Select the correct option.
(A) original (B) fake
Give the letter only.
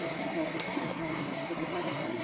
B